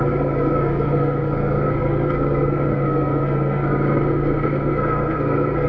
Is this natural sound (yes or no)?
no